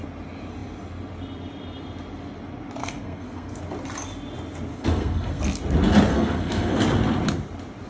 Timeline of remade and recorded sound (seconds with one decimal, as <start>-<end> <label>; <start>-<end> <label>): 0.0-2.8 recorded; 2.8-3.6 remade; 3.6-4.7 recorded; 4.7-5.4 remade; 5.4-6.1 recorded; 6.1-6.8 remade; 6.8-7.9 recorded